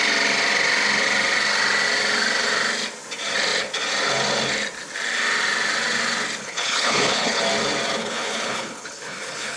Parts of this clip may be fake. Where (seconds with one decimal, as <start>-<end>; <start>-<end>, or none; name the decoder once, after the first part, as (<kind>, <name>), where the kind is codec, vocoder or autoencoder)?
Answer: 6.4-7.4 (codec, HILCodec); 8.0-9.6